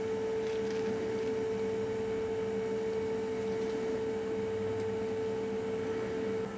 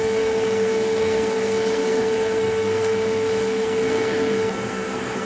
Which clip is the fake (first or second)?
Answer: second